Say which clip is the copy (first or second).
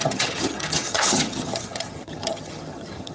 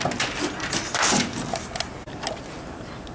first